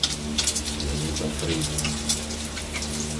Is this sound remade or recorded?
recorded